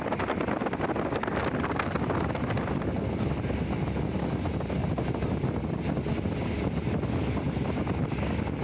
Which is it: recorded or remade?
recorded